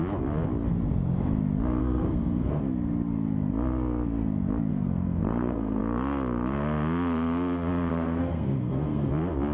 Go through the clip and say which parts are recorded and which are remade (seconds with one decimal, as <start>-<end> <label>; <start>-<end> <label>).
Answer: 0.0-1.8 recorded; 1.8-2.6 remade; 2.6-4.7 recorded; 4.7-5.8 remade; 5.8-7.9 recorded; 7.9-9.1 remade; 9.1-9.5 recorded